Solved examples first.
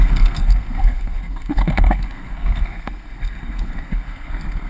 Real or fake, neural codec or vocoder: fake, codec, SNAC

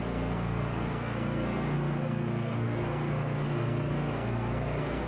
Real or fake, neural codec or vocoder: fake, codec, SNAC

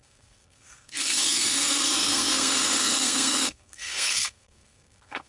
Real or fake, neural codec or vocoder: fake, codec, SNAC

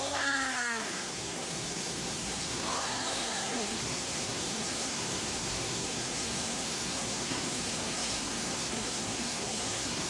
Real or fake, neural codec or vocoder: fake, codec, SNAC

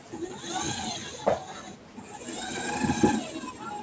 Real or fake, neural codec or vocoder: real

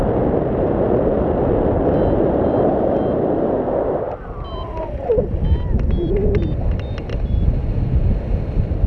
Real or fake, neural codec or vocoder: real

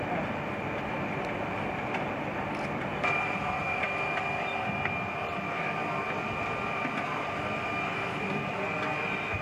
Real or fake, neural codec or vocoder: real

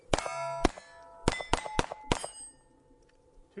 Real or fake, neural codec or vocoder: real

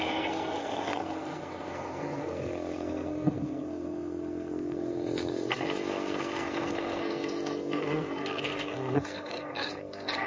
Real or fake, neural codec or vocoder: fake, codec, SNAC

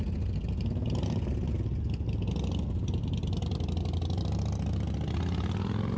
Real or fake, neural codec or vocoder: real